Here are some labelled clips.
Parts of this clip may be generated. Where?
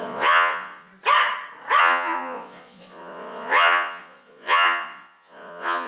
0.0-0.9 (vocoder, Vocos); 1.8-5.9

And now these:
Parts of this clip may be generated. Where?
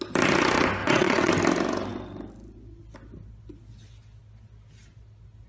0.8-1.3 (vocoder, WaveNeXt)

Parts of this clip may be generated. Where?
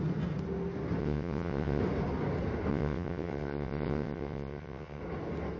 1.0-1.8 (vocoder, WaveNeXt); 2.7-5.0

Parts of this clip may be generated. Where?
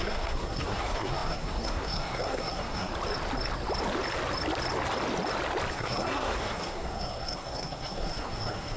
0.0-2.9 (codec, SNAC); 5.7-8.8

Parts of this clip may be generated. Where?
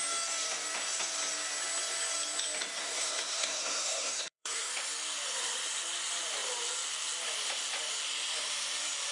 2.8-4.7 (codec, SNAC)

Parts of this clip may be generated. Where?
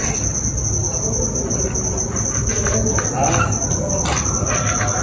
none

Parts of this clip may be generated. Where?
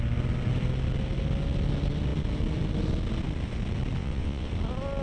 4.0-4.5 (vocoder, WaveNeXt)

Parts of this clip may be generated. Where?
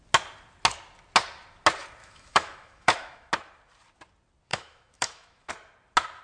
2.0-3.3 (autoencoder, DAC-VAE); 4.5-5.5